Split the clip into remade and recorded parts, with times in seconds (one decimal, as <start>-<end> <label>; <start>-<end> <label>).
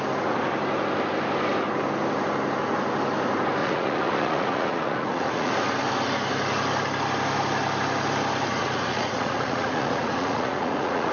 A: 0.0-3.6 recorded; 3.6-5.5 remade; 5.5-8.5 recorded; 8.5-11.1 remade